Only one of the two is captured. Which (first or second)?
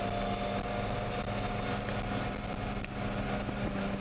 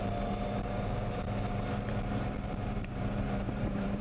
first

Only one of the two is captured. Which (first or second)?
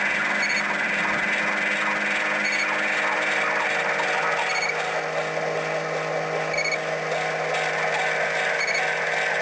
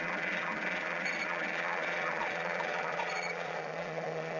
first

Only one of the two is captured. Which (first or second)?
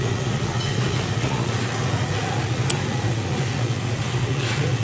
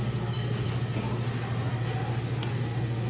second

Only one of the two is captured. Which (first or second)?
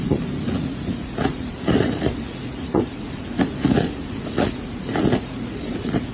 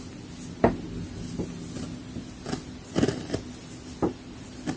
second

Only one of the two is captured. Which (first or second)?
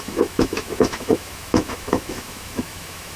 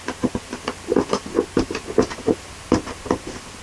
second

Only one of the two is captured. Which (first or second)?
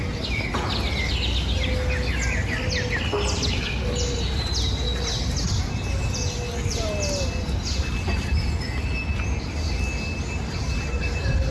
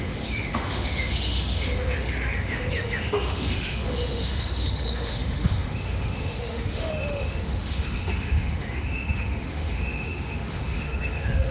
first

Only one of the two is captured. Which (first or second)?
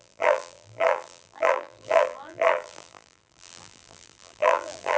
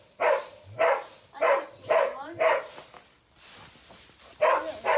second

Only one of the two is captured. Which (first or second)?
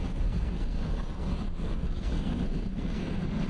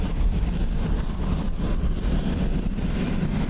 second